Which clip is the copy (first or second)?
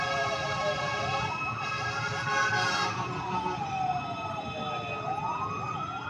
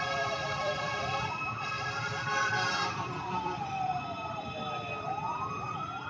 second